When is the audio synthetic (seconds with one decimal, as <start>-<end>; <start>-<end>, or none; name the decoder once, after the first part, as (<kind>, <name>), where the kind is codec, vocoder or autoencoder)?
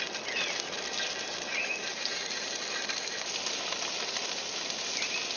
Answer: none